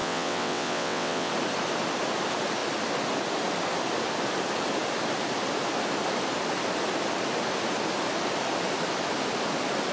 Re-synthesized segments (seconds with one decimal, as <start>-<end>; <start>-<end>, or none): 0.0-1.3